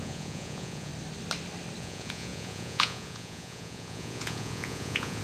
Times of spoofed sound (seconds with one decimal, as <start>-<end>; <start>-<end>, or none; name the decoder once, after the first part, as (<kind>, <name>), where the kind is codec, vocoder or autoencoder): 0.0-0.9 (vocoder, Vocos); 1.8-5.2